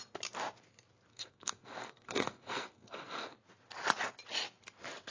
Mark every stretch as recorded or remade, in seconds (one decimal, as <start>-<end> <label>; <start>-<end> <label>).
0.0-1.1 recorded; 1.1-3.4 remade; 3.4-5.1 recorded